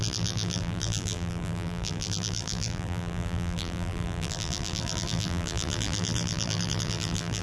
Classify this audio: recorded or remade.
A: remade